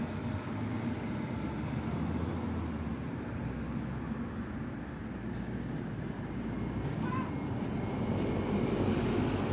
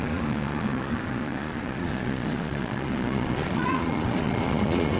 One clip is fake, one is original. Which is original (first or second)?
first